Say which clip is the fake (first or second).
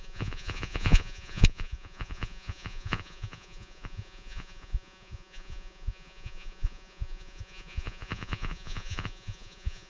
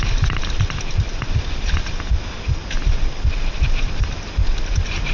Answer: first